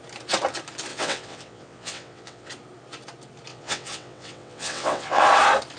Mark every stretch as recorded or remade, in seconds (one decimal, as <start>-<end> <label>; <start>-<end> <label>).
0.0-0.9 recorded; 0.9-2.5 remade; 2.5-3.5 recorded; 3.5-5.2 remade; 5.2-5.8 recorded